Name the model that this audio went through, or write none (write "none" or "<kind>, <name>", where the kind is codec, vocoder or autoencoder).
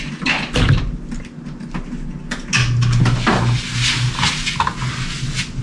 none